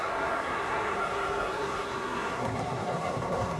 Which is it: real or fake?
fake